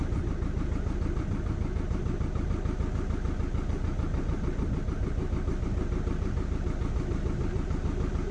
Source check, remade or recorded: recorded